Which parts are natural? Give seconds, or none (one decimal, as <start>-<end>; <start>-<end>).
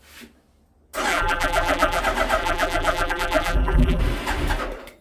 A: 0.0-1.1; 2.0-2.4; 4.0-5.0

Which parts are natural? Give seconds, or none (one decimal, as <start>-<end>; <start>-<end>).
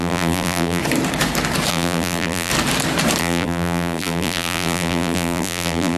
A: 0.8-1.7; 2.5-3.2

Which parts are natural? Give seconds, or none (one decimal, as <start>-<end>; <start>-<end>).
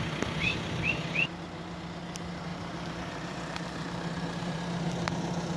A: 0.0-2.5; 4.6-5.6